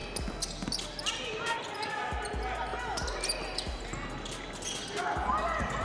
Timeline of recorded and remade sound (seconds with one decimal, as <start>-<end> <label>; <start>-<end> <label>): 0.0-5.8 recorded

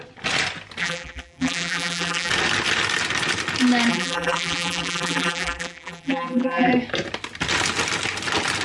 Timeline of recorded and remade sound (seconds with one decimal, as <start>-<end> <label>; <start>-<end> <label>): 0.0-0.8 recorded; 0.8-2.3 remade; 2.3-3.9 recorded; 3.9-6.7 remade; 6.7-8.6 recorded

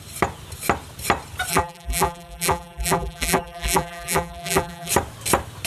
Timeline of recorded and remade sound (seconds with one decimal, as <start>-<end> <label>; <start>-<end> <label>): 0.0-1.5 recorded; 1.5-4.9 remade; 4.9-5.7 recorded

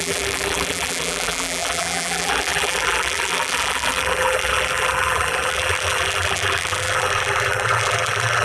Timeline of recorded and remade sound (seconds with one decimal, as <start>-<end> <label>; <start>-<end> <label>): 0.0-8.4 remade

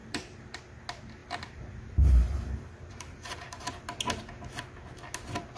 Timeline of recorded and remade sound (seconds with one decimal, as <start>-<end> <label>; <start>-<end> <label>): 0.0-0.6 remade; 0.6-1.2 recorded; 1.2-3.6 remade; 3.6-5.6 recorded

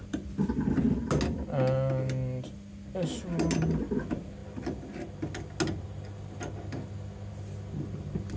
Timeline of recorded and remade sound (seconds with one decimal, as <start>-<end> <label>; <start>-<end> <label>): 0.0-8.4 recorded

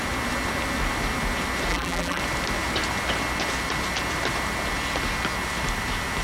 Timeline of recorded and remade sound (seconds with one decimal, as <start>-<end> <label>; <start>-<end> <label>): 0.0-1.7 recorded; 1.7-2.2 remade; 2.2-6.2 recorded

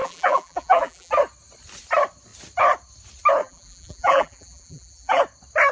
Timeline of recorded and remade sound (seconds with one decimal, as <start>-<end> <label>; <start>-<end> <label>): 0.0-1.1 remade; 1.1-3.4 recorded; 3.4-5.2 remade; 5.2-5.7 recorded